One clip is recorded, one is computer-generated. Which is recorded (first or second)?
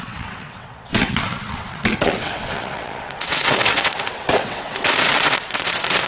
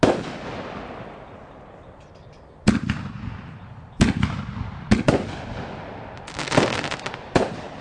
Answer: second